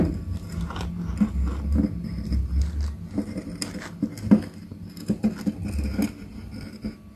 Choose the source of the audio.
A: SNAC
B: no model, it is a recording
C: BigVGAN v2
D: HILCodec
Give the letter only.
B